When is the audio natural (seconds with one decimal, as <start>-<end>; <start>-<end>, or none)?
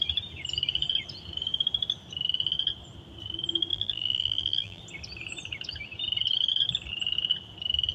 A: 0.0-3.7; 4.8-7.9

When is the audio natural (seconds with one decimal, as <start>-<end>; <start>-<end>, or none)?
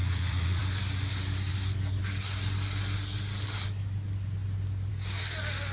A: 0.6-5.7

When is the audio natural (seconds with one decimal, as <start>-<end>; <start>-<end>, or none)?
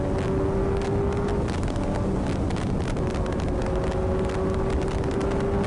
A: 0.0-5.7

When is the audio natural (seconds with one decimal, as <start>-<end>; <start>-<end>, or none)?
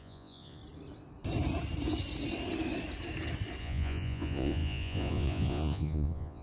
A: 0.6-3.6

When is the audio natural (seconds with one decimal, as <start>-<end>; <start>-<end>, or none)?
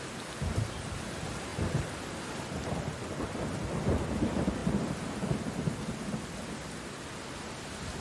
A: 0.0-1.5; 3.1-8.0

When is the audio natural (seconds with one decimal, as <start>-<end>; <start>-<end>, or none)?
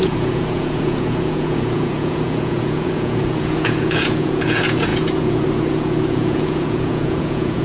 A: none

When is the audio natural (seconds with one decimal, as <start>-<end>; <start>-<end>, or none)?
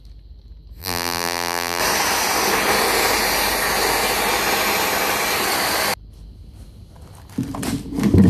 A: 0.0-0.8; 1.8-8.3